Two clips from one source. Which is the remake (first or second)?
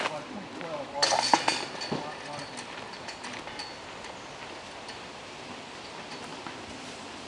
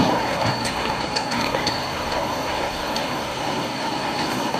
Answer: second